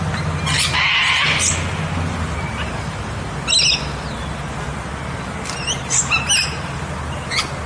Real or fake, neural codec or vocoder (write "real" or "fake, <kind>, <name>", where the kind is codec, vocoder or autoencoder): real